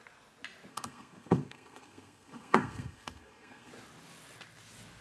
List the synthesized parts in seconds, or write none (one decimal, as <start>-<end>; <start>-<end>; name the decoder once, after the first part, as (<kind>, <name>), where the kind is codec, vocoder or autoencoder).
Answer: 0.7-3.7 (codec, SNAC)

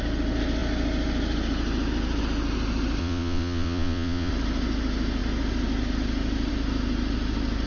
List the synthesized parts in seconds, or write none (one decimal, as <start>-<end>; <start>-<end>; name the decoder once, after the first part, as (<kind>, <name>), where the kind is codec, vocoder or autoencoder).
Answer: 3.0-4.3 (vocoder, Vocos)

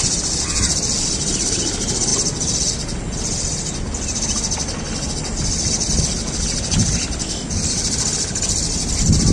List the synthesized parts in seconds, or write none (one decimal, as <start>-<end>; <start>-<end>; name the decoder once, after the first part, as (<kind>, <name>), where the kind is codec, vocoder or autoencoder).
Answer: none